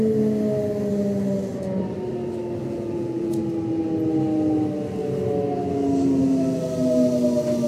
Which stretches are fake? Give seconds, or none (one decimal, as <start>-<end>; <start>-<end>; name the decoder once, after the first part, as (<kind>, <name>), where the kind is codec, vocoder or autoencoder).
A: 2.6-3.4 (vocoder, Vocos)